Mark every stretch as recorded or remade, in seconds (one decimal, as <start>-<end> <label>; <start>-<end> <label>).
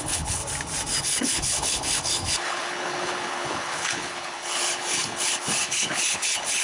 0.0-0.4 remade; 0.4-1.0 recorded; 1.0-6.6 remade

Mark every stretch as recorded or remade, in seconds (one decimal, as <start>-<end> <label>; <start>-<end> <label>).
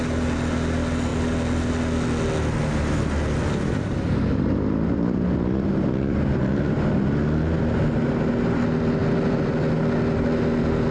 0.0-10.9 recorded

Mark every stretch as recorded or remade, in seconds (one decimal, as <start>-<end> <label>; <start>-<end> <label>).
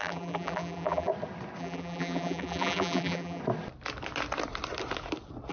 0.0-1.1 remade; 1.1-1.6 recorded; 1.6-3.4 remade; 3.4-5.5 recorded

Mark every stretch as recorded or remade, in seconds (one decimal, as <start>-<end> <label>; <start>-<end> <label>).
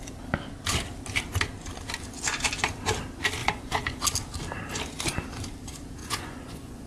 0.0-3.4 recorded; 3.4-4.0 remade; 4.0-6.0 recorded; 6.0-6.9 remade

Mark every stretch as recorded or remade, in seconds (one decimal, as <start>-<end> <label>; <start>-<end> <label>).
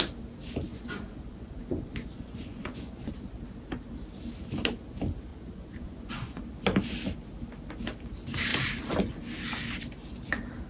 0.0-0.7 recorded; 0.7-3.1 remade; 3.1-5.3 recorded; 5.3-6.4 remade; 6.4-10.7 recorded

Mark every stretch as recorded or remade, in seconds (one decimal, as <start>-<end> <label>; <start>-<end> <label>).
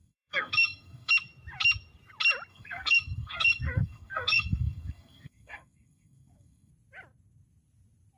0.0-1.1 remade; 1.1-2.5 recorded; 2.5-6.7 remade; 6.7-8.2 recorded